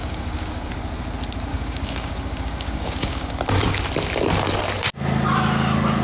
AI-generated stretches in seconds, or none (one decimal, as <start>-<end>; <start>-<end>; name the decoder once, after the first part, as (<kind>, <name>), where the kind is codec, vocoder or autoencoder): 0.0-0.7 (codec, DAC); 1.5-3.3